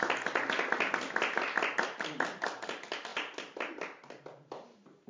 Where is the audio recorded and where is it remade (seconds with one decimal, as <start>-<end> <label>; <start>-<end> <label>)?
0.0-5.1 recorded